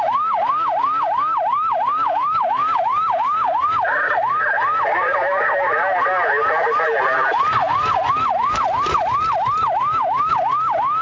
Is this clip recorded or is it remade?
recorded